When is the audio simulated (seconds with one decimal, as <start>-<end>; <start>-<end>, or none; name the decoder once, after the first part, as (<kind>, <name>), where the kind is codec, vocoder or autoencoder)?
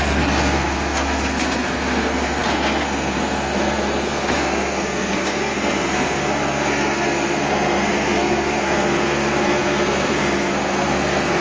0.0-11.4 (codec, SNAC)